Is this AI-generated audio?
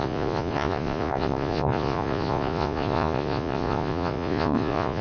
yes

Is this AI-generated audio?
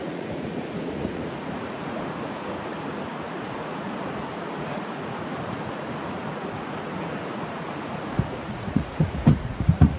yes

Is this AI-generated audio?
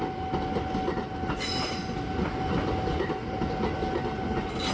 no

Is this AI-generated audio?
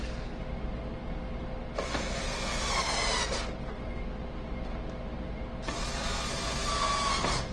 no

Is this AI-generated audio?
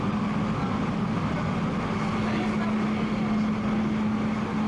no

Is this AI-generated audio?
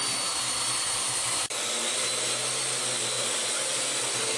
no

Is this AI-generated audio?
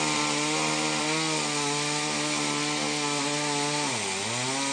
no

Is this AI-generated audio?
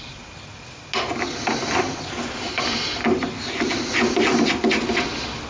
no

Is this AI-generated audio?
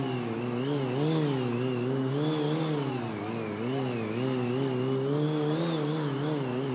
no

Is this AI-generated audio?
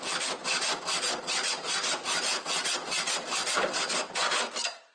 no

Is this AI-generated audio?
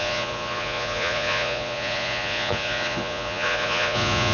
yes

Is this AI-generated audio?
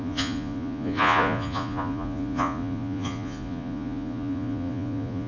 yes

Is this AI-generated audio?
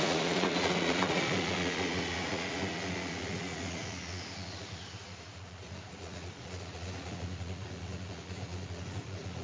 yes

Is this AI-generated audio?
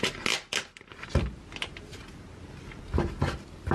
no